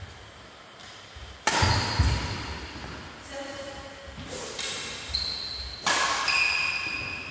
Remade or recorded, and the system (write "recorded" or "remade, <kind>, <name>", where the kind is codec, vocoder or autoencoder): recorded